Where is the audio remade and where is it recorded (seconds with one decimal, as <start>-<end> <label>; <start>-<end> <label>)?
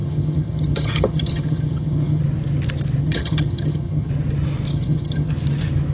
0.0-2.2 remade; 2.2-3.0 recorded; 3.0-4.1 remade; 4.1-4.7 recorded; 4.7-5.3 remade; 5.3-5.9 recorded